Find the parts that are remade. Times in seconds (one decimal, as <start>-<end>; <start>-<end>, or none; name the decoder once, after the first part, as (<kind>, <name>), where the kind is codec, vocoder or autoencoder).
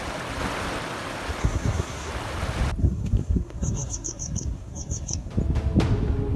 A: 1.4-2.1 (codec, SNAC); 2.8-5.3